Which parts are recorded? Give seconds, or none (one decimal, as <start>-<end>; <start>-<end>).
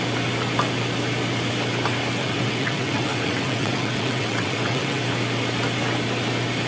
0.0-2.2; 5.0-6.7